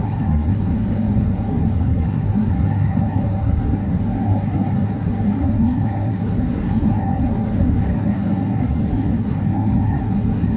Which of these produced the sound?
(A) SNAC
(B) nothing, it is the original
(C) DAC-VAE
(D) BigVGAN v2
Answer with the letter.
A